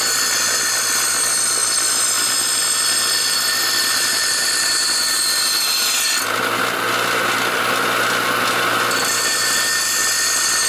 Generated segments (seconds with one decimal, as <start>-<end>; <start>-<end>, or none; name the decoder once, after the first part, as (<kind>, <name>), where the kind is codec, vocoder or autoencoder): 1.6-4.7 (vocoder, BigVGAN v2)

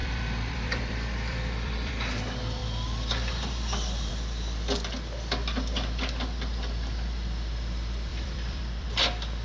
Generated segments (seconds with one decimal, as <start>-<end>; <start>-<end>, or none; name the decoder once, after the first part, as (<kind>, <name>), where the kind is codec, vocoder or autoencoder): 0.0-1.9 (vocoder, BigVGAN v2); 8.1-9.0

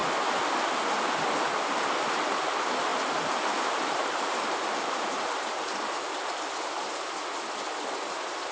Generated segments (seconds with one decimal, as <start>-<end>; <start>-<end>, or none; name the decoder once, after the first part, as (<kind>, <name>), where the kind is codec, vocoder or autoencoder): 2.9-5.4 (vocoder, BigVGAN v2)

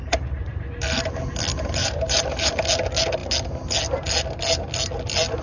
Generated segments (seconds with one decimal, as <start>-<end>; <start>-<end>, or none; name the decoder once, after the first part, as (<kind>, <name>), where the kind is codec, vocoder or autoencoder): 0.5-1.2 (vocoder, BigVGAN v2); 1.8-2.5

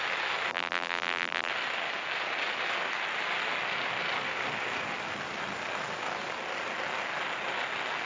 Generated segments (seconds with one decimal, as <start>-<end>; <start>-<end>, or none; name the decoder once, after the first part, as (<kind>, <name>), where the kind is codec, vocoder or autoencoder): 0.5-1.5 (vocoder, BigVGAN v2)

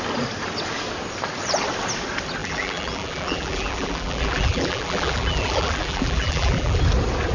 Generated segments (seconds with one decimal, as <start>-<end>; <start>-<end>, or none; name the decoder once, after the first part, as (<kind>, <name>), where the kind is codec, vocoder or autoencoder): 2.4-6.8 (vocoder, BigVGAN v2)

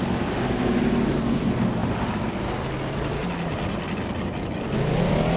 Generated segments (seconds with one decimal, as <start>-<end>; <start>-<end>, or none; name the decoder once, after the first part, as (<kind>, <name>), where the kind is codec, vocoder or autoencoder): none

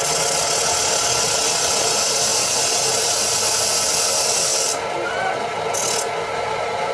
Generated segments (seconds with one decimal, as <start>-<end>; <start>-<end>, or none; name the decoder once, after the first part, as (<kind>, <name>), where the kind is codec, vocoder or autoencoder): 2.3-2.8 (vocoder, BigVGAN v2); 4.5-5.6